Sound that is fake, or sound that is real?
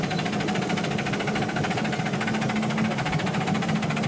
real